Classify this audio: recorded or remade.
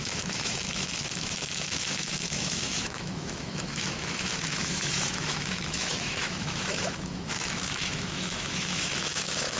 remade